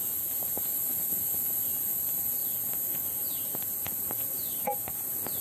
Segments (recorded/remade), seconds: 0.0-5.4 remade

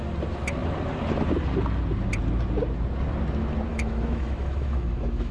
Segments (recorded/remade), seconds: 0.0-3.7 recorded; 3.7-5.3 remade

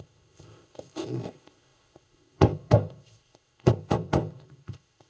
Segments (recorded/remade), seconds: 0.0-5.1 remade

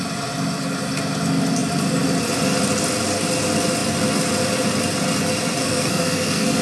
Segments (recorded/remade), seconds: 0.0-5.6 recorded; 5.6-6.6 remade